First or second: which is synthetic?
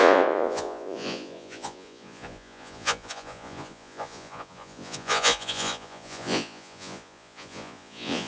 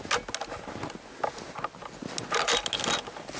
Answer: first